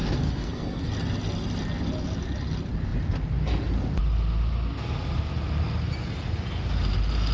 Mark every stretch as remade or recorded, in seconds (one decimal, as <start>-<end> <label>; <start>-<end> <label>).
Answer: 0.0-0.9 remade; 0.9-7.3 recorded